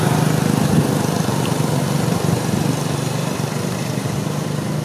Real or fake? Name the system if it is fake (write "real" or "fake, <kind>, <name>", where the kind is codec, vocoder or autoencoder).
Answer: real